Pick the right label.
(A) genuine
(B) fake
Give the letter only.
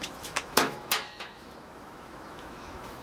B